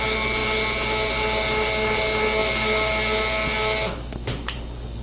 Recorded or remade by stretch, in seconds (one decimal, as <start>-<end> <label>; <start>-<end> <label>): 0.0-2.4 recorded; 2.4-2.9 remade; 2.9-5.0 recorded